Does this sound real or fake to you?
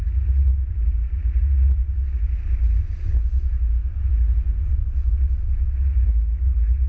real